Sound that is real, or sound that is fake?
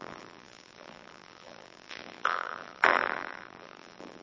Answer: fake